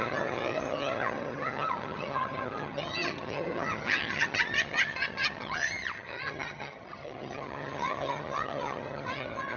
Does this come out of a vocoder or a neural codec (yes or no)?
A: yes